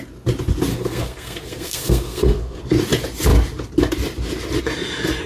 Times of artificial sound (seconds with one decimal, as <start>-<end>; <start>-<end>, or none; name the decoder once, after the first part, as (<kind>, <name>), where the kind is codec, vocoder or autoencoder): 0.7-2.6 (codec, SNAC)